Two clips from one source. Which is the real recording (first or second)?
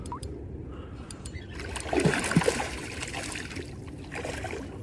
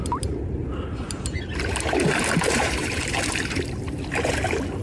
first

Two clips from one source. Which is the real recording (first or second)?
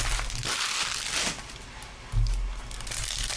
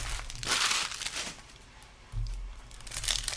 first